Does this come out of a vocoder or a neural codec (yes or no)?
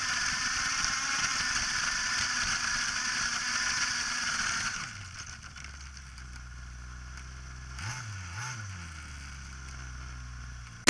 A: no